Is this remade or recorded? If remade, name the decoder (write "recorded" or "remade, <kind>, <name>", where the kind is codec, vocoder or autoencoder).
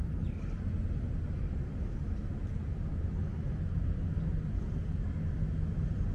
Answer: recorded